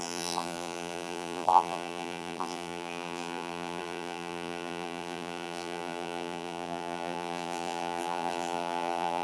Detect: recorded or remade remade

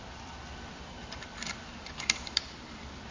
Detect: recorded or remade remade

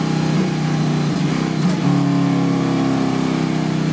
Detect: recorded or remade recorded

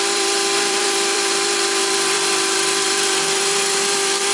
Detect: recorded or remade remade